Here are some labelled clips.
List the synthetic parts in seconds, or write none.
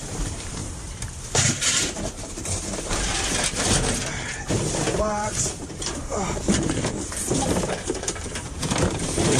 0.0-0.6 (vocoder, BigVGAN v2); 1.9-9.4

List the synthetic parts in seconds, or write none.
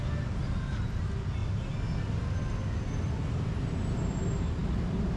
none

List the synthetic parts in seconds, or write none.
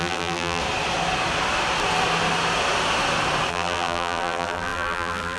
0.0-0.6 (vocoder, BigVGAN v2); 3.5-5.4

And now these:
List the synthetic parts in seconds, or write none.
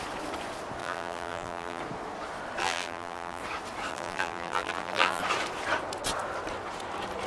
0.8-1.8 (vocoder, BigVGAN v2); 2.6-3.4; 3.9-5.2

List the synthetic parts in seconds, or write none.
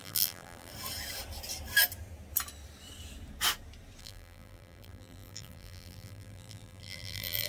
0.0-0.7 (vocoder, BigVGAN v2); 4.0-7.5